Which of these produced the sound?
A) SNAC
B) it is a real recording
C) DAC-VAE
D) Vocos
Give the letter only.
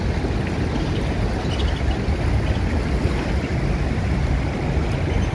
B